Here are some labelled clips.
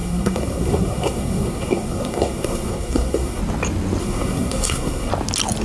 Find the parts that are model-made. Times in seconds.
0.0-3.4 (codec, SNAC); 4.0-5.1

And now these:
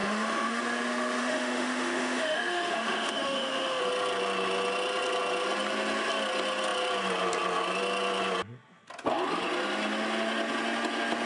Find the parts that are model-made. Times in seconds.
0.0-0.6 (autoencoder, DAC-VAE); 1.2-3.8

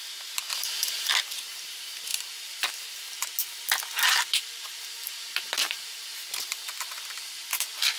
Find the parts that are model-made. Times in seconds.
0.5-1.1 (vocoder, BigVGAN v2); 2.1-3.1; 4.1-6.5